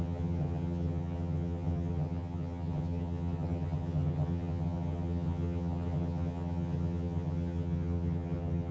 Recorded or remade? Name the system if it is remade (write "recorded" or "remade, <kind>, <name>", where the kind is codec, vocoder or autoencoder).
remade, vocoder, HiFi-GAN